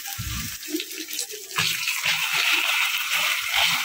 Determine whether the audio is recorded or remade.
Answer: recorded